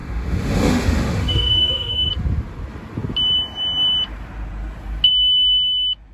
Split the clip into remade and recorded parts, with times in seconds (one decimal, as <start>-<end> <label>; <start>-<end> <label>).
0.0-2.1 remade; 2.1-6.1 recorded